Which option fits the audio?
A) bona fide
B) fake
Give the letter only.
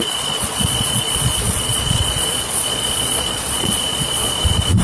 B